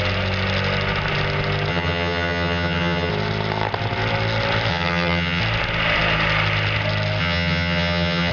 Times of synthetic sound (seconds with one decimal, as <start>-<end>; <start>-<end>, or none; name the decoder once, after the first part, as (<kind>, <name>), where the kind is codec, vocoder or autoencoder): 1.7-3.1 (vocoder, HiFi-GAN); 4.7-5.4; 7.2-8.3